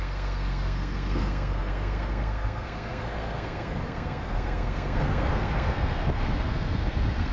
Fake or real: fake